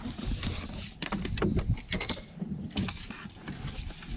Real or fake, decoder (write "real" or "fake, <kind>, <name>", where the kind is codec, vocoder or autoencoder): real